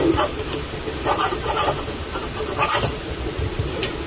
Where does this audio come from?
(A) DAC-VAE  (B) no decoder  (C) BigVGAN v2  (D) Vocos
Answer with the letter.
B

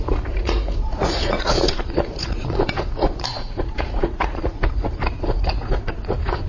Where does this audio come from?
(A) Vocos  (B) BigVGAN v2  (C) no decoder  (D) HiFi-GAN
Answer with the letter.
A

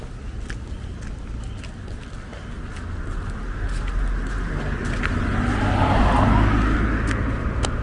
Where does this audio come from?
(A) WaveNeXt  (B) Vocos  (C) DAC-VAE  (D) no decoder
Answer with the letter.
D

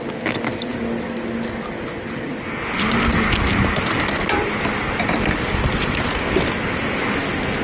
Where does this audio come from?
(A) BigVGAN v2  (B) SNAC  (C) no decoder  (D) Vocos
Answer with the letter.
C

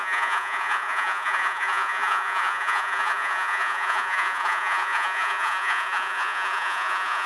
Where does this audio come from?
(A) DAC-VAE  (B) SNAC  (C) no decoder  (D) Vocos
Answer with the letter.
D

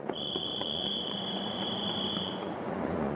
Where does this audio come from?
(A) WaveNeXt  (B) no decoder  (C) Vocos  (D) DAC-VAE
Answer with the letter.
C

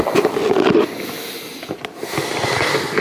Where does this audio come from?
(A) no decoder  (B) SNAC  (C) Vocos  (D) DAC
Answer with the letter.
A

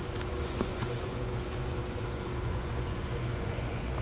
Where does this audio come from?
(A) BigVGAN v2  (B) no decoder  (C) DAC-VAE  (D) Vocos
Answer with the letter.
D